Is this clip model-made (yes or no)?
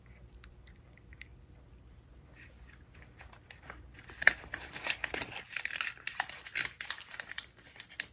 yes